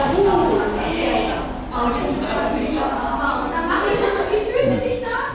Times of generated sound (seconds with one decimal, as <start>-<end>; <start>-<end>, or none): none